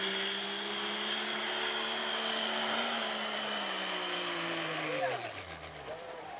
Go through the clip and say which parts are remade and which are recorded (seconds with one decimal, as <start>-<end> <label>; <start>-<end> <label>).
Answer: 0.0-2.0 recorded; 2.0-2.7 remade; 2.7-6.4 recorded